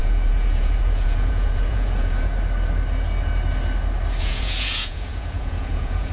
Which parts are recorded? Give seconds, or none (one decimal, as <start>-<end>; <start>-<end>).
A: 2.3-4.2